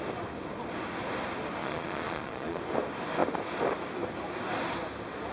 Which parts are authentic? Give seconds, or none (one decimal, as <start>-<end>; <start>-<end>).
0.0-1.6; 2.6-5.3